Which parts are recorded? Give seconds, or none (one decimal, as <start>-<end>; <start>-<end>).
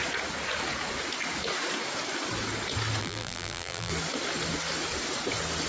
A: 0.0-3.0; 3.9-5.7